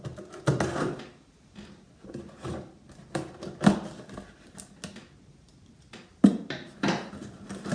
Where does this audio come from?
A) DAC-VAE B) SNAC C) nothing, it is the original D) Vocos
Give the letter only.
C